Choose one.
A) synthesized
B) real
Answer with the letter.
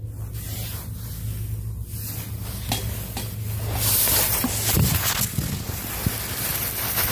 B